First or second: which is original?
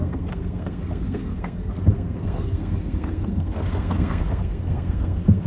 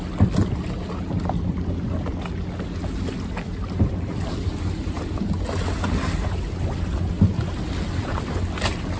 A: second